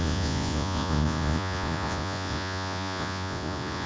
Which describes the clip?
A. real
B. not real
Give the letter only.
B